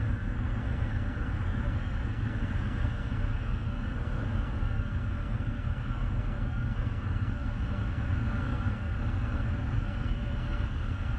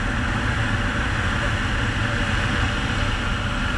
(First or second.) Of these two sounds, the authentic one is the second